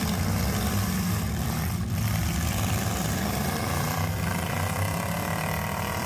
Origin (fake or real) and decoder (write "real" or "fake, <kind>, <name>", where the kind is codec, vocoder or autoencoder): fake, vocoder, BigVGAN v2